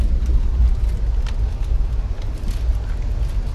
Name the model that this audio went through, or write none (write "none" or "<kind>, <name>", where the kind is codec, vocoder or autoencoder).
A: none